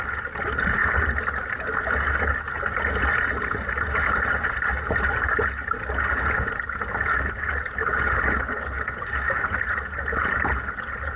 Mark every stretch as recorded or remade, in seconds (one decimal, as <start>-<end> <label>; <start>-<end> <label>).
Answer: 0.0-11.2 recorded